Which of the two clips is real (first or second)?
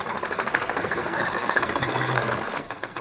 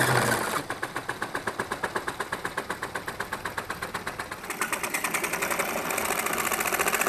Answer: second